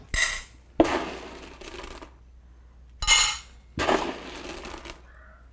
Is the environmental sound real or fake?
real